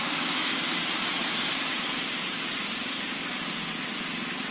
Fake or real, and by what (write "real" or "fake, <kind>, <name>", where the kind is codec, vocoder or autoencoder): real